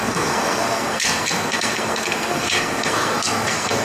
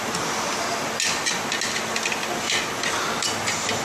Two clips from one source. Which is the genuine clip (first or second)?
second